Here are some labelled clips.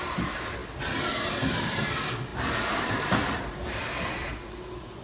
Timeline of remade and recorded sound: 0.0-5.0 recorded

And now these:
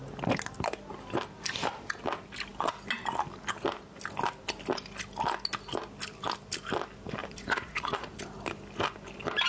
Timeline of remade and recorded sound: 0.0-7.2 recorded; 7.2-8.2 remade; 8.2-9.5 recorded

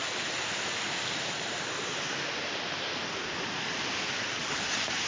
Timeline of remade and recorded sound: 0.0-4.4 recorded; 4.4-5.1 remade

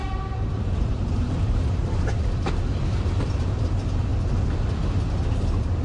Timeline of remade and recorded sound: 0.0-2.5 remade; 2.5-5.8 recorded

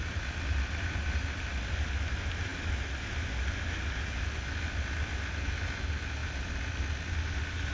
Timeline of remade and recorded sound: 0.0-7.7 recorded

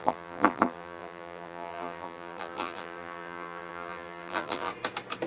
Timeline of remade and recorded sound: 0.0-4.7 remade; 4.7-5.3 recorded

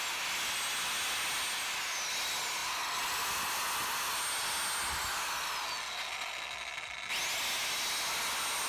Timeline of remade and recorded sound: 0.0-8.7 recorded

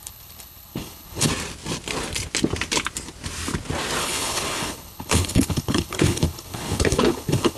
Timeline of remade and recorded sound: 0.0-1.3 remade; 1.3-4.0 recorded; 4.0-7.6 remade